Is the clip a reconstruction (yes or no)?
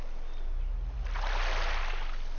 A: no